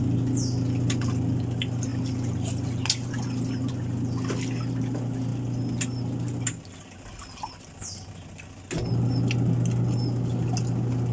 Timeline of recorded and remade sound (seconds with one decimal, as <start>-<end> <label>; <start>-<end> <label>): 0.0-11.1 recorded